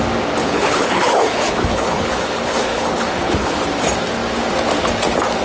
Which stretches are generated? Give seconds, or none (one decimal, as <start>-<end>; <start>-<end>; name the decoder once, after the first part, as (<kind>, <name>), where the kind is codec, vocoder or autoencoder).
0.4-3.6 (codec, HILCodec)

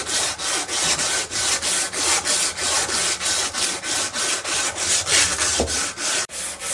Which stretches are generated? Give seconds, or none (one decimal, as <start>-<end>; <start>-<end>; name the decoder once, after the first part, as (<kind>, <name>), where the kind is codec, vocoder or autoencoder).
none

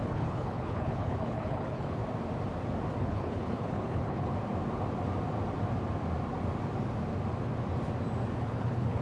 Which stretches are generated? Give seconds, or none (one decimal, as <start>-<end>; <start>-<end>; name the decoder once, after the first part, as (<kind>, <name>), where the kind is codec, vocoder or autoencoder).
0.0-2.0 (codec, HILCodec); 3.0-4.3; 8.4-9.0